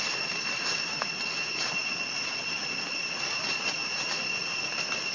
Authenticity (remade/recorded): recorded